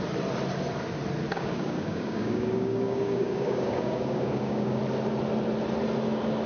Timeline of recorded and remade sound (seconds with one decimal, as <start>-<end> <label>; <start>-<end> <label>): 0.0-1.3 recorded; 1.3-4.8 remade; 4.8-6.5 recorded